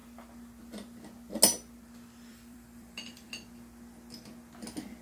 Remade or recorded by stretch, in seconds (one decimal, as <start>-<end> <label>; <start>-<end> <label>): 0.0-2.3 recorded; 2.3-3.3 remade; 3.3-5.0 recorded